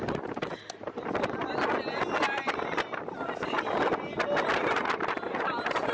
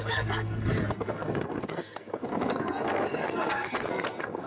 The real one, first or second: first